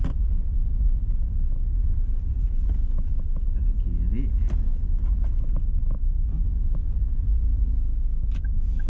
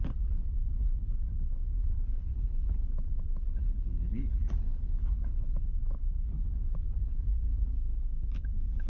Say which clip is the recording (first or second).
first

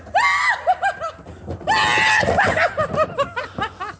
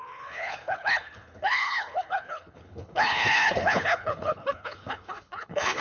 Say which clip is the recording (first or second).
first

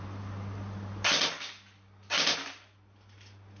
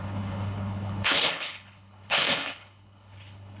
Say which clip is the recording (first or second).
first